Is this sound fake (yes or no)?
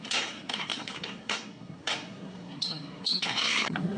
yes